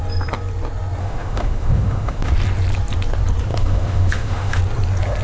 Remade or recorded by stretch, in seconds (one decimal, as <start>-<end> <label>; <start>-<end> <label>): 0.0-1.0 recorded; 1.0-2.3 remade; 2.3-3.5 recorded; 3.5-4.6 remade; 4.6-5.2 recorded